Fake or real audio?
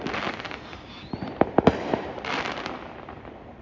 fake